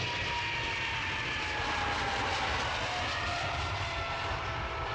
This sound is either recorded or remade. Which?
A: recorded